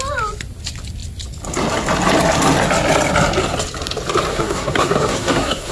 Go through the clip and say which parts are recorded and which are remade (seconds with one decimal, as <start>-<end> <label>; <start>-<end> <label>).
0.0-4.3 recorded; 4.3-5.7 remade